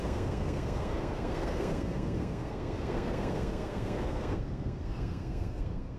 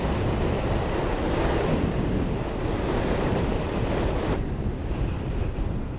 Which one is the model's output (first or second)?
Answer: first